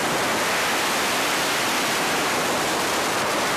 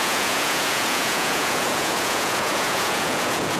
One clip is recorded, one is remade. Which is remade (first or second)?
second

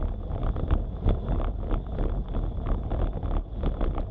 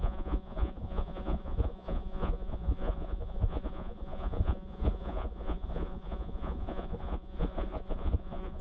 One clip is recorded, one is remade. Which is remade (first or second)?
second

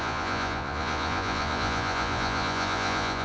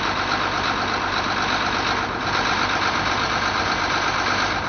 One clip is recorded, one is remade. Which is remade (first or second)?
first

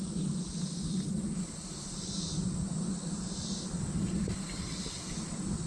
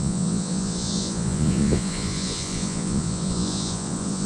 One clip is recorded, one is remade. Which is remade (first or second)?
second